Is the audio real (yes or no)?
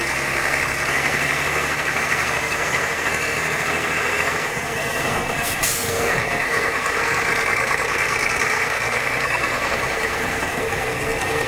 no